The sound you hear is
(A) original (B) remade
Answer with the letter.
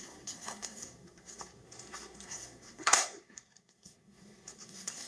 B